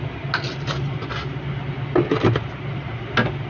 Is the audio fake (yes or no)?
no